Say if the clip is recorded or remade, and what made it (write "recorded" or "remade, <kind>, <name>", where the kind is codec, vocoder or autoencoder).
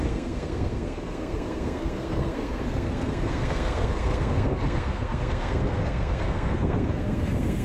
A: remade, codec, SNAC